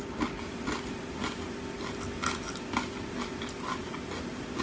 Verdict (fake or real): real